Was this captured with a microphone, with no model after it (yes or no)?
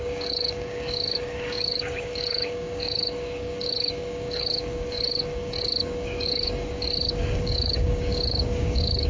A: no